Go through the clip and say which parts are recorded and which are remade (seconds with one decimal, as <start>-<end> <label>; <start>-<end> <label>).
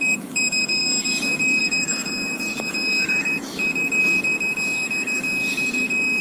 0.0-6.2 remade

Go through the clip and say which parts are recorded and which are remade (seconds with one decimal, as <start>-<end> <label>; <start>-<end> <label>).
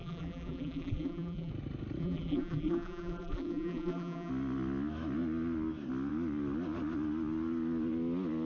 0.0-1.5 remade; 1.5-2.0 recorded; 2.0-4.3 remade; 4.3-8.5 recorded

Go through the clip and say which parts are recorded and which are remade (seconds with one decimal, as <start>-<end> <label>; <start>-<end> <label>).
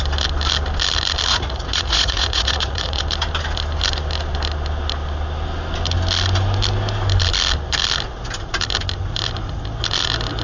0.0-1.3 recorded; 1.3-3.0 remade; 3.0-10.4 recorded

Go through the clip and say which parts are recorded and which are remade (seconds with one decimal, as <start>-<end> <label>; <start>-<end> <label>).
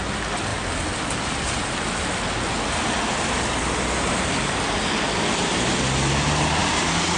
0.0-7.2 recorded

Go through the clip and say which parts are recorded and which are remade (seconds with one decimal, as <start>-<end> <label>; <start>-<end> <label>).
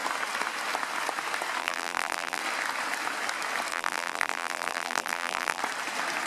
0.0-1.6 recorded; 1.6-2.4 remade; 2.4-3.7 recorded; 3.7-5.6 remade; 5.6-6.3 recorded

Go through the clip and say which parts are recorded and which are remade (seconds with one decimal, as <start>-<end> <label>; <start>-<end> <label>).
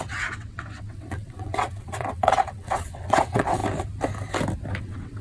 0.0-3.6 remade; 3.6-4.8 recorded; 4.8-5.2 remade